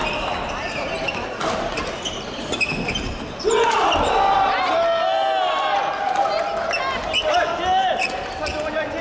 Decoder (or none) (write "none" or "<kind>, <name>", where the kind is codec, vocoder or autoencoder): none